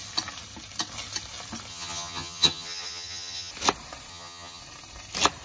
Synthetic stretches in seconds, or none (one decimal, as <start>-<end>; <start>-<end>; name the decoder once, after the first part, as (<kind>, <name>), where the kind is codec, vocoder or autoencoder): 1.7-3.5 (vocoder, HiFi-GAN); 4.1-4.6